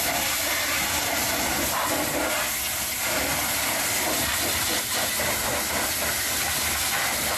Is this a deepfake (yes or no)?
no